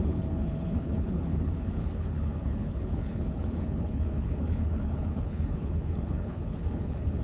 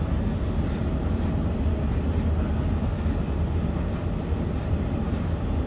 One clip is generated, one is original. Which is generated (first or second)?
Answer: first